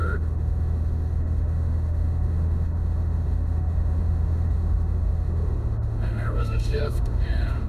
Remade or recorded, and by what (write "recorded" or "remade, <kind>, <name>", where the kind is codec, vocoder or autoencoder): remade, autoencoder, DAC-VAE